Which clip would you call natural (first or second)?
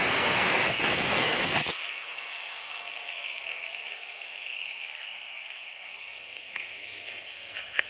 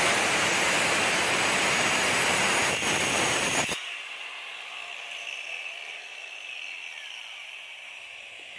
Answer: second